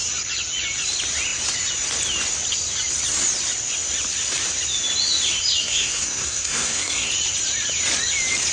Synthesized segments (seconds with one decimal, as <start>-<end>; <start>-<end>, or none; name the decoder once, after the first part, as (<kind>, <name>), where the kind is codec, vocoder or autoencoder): 5.6-7.1 (codec, SNAC)